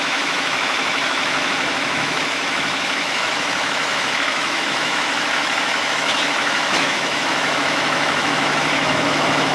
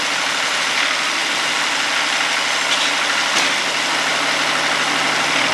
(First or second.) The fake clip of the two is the first